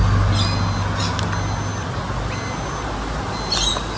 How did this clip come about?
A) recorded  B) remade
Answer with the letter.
A